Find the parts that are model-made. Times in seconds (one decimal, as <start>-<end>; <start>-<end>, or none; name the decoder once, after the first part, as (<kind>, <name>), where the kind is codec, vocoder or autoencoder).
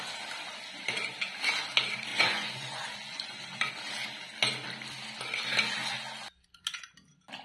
2.1-3.7 (vocoder, Vocos)